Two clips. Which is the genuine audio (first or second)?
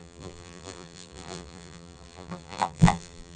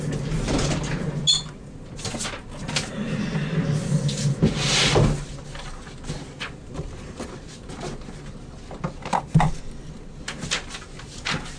second